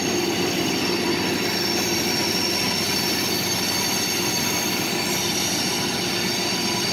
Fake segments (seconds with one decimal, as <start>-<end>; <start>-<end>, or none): none